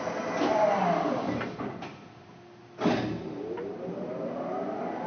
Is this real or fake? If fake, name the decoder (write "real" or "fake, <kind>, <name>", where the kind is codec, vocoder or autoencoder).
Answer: real